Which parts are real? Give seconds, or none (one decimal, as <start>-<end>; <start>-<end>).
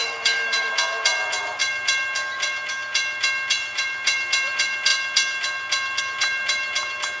0.7-7.2